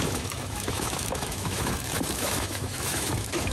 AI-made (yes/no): yes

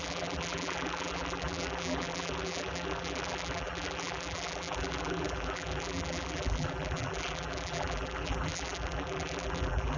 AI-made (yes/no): yes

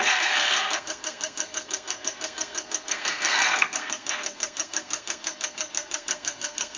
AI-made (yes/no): yes